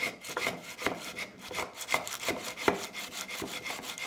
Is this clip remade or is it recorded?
recorded